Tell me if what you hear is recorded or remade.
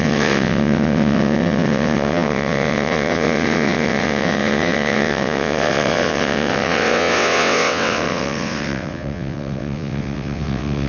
remade